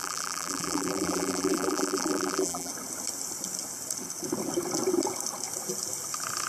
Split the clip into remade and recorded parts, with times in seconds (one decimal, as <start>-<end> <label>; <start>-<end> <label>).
0.0-2.7 remade; 2.7-6.5 recorded